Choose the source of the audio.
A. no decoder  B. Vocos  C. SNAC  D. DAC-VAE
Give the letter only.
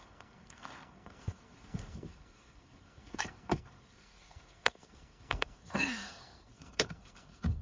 C